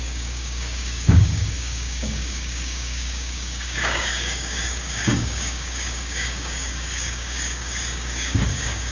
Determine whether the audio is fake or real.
fake